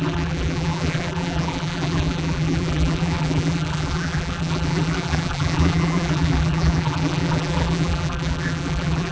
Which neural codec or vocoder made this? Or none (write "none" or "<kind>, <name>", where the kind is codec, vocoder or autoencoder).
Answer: vocoder, BigVGAN v2